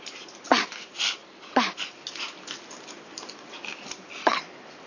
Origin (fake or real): real